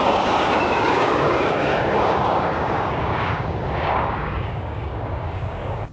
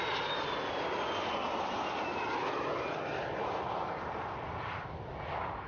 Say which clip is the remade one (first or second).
first